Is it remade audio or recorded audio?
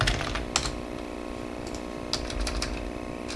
recorded